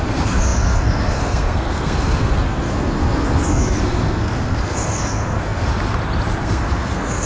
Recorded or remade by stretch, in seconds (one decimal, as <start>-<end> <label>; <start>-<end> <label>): 0.0-5.7 remade; 5.7-6.4 recorded; 6.4-7.3 remade